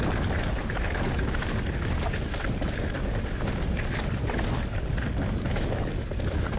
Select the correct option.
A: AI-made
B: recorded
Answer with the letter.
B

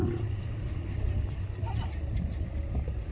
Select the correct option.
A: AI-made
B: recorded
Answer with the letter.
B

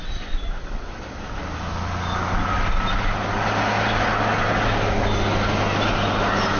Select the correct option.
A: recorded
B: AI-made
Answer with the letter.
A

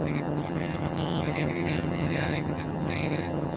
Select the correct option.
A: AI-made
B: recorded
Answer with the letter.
A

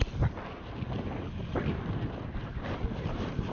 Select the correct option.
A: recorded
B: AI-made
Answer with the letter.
A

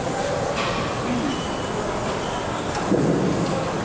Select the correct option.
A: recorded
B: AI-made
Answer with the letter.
A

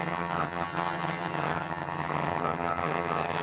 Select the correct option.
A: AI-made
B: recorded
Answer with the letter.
A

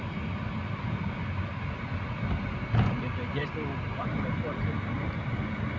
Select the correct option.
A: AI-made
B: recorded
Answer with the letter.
B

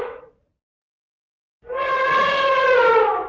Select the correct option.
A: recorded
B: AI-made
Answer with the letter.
A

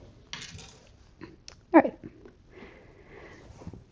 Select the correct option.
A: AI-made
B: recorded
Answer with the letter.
B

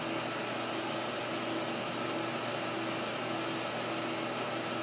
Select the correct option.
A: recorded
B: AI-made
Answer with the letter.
A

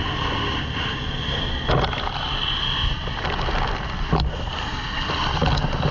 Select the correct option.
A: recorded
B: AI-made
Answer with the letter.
A